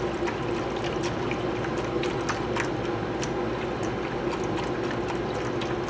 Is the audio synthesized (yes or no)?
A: no